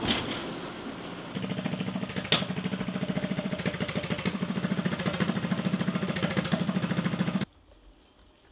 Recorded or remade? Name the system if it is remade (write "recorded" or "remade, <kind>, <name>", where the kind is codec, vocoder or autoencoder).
recorded